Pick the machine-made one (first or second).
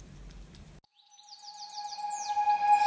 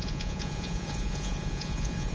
second